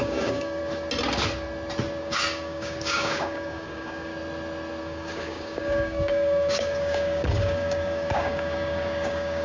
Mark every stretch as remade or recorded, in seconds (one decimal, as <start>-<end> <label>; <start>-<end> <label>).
0.0-0.6 remade; 0.6-2.0 recorded; 2.0-4.1 remade; 4.1-4.8 recorded; 4.8-9.4 remade